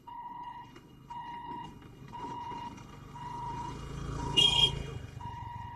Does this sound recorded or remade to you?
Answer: remade